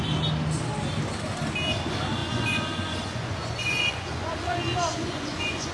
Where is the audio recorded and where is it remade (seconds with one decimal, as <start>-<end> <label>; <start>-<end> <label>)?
0.0-2.2 recorded; 2.2-5.7 remade